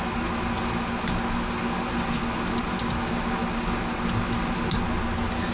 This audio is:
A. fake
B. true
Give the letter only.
B